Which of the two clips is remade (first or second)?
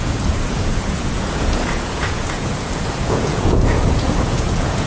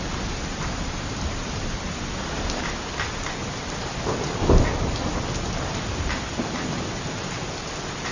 first